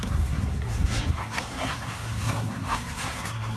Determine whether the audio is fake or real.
fake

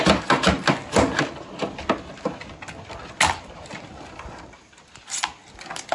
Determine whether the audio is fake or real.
real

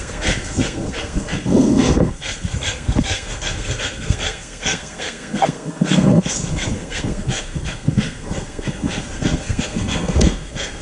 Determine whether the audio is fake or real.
fake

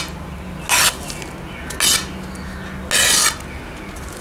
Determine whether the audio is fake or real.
real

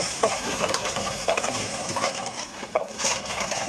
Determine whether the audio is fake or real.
fake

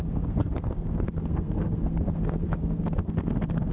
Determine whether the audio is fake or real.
fake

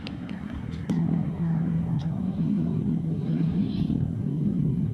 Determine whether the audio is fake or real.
fake